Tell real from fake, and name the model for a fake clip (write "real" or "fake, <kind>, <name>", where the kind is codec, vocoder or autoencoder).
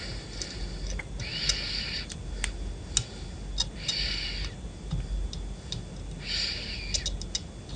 real